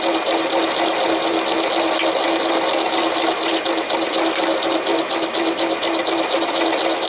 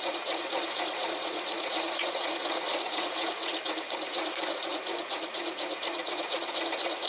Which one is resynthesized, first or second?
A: second